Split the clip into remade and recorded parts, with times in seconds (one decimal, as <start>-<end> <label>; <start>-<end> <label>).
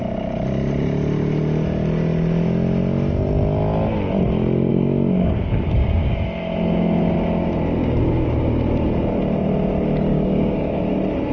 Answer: 0.0-4.7 recorded; 4.7-6.1 remade; 6.1-7.8 recorded; 7.8-8.5 remade; 8.5-10.1 recorded; 10.1-10.8 remade; 10.8-11.3 recorded